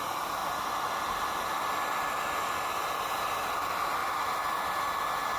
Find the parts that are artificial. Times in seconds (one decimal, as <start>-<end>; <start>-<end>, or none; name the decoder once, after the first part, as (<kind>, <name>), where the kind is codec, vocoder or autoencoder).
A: none

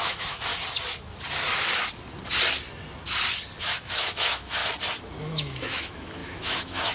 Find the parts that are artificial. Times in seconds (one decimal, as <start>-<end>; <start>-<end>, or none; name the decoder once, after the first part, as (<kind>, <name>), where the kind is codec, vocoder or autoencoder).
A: 0.0-0.5 (autoencoder, DAC-VAE); 3.6-4.6; 5.2-6.9

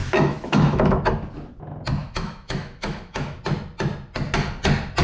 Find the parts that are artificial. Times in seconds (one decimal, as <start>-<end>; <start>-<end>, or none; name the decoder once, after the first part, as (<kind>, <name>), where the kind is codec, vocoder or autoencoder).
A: 0.0-1.0 (autoencoder, DAC-VAE); 2.0-3.4

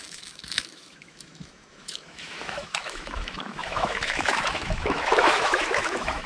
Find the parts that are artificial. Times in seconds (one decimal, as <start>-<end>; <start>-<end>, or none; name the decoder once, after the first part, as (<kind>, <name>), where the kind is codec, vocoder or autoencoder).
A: 0.0-6.3 (autoencoder, DAC-VAE)

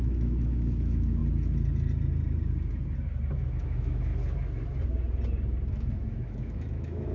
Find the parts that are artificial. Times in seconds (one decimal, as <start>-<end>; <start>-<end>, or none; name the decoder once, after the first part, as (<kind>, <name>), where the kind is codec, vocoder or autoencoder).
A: 0.0-1.2 (autoencoder, DAC-VAE); 3.3-4.1; 5.7-7.1

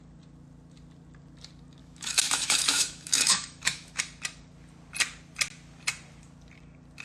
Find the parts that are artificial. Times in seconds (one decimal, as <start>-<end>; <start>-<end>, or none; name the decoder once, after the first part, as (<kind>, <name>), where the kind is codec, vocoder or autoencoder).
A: 1.8-4.0 (autoencoder, DAC-VAE)